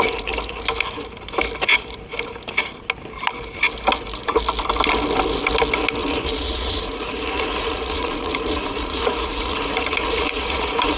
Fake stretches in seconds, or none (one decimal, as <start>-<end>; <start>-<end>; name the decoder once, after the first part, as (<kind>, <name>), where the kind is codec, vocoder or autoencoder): 6.0-11.0 (vocoder, Vocos)